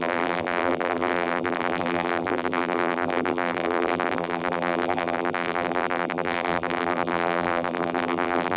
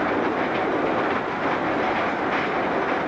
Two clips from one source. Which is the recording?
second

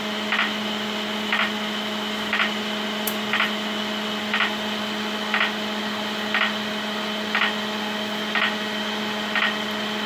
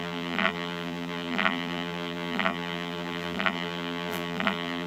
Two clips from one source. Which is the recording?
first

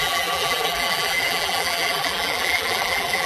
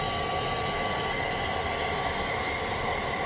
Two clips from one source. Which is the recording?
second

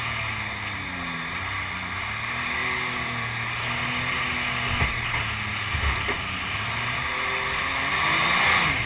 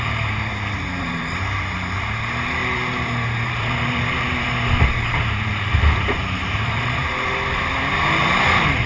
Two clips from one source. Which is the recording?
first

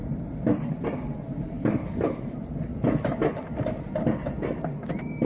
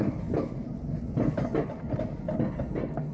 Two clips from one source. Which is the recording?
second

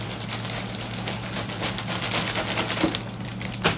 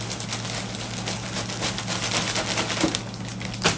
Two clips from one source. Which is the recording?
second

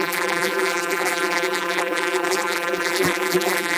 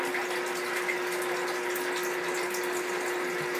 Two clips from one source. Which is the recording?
second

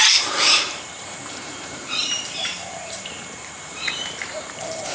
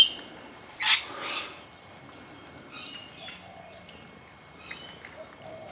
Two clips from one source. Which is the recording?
second